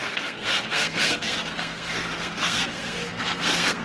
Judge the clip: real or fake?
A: fake